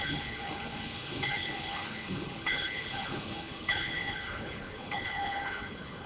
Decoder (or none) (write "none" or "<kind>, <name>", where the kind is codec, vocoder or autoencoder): codec, HILCodec